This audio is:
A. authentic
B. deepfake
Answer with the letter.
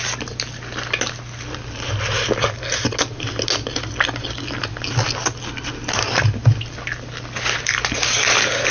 A